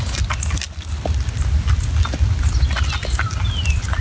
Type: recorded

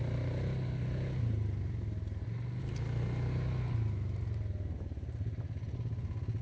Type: recorded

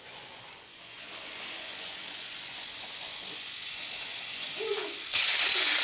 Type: remade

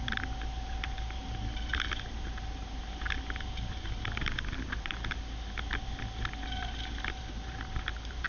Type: recorded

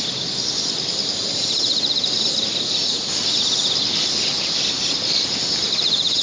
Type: recorded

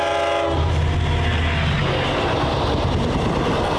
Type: recorded